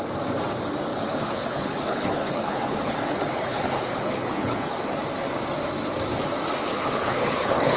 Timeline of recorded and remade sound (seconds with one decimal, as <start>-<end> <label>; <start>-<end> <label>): 0.0-0.9 recorded; 0.9-4.8 remade; 4.8-6.7 recorded; 6.7-7.8 remade